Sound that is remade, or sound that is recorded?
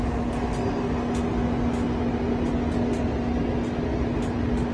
recorded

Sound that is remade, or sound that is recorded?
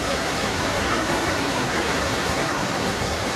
remade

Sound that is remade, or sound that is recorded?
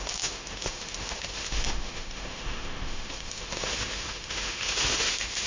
remade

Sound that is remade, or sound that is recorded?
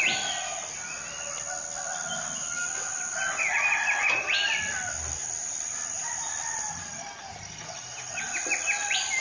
recorded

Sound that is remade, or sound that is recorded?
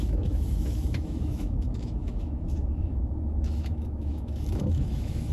remade